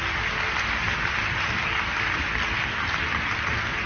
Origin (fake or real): real